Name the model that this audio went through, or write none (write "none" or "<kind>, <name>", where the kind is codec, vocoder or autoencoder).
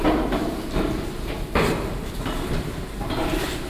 vocoder, BigVGAN v2